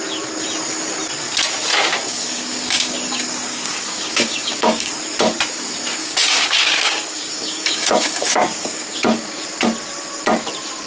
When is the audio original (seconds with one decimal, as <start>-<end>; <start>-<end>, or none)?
0.0-1.7; 5.0-6.0; 9.4-10.9